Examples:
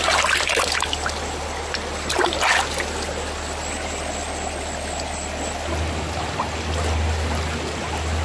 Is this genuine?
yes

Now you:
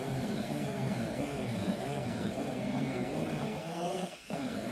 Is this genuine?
no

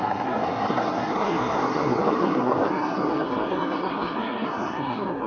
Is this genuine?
no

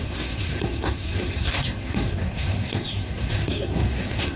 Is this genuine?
no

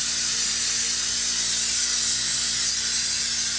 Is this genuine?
yes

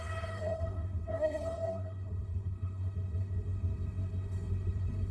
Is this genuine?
no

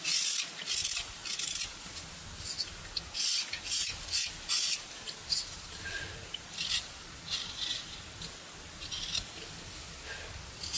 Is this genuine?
yes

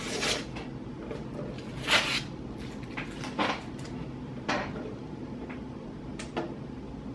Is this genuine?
yes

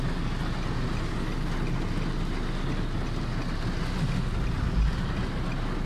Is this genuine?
yes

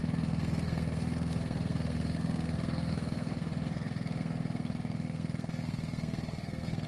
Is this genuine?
no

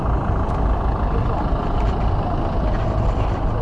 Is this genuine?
yes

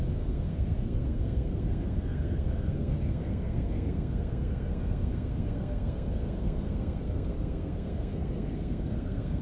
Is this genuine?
no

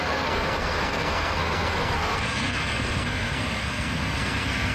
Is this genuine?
no